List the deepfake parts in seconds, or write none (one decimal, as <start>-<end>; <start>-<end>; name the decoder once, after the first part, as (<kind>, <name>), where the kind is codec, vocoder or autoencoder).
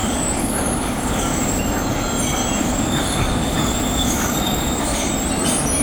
0.0-1.6 (codec, DAC); 2.6-5.1